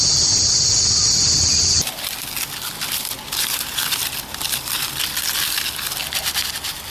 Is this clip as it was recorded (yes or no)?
yes